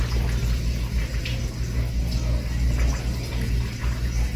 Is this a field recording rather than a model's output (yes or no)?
yes